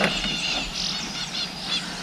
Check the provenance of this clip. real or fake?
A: real